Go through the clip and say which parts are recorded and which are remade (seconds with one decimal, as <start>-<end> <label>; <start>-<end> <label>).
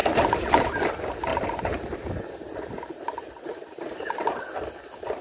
0.0-0.7 remade; 0.7-1.3 recorded; 1.3-4.4 remade; 4.4-5.2 recorded